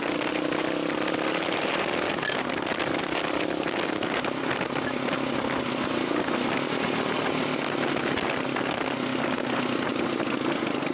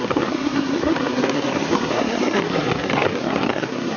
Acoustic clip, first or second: first